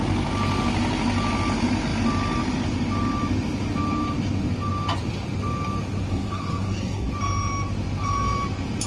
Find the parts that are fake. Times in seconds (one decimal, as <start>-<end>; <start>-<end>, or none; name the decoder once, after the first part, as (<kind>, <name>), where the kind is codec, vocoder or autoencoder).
6.1-7.1 (codec, SNAC)

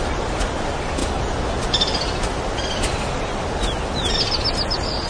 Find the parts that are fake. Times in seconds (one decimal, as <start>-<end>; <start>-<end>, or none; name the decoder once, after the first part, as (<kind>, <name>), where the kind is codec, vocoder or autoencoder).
none

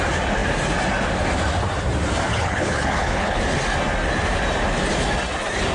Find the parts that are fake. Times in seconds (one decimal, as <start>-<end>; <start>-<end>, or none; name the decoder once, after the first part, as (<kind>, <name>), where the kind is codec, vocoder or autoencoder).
2.3-3.4 (codec, HILCodec)